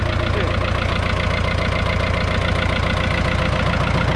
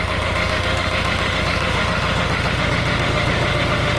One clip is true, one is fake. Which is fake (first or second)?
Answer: second